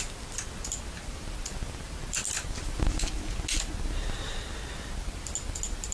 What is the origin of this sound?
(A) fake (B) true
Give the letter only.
B